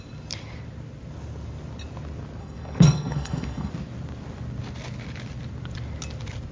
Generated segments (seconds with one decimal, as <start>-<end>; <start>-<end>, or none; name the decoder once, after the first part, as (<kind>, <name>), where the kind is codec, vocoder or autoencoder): 2.4-3.7 (codec, SNAC)